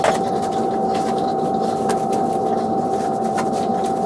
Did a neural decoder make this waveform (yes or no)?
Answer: no